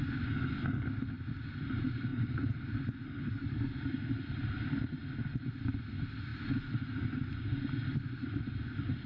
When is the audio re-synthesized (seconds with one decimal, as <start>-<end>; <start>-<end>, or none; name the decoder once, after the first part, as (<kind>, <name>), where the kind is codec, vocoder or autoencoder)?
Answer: none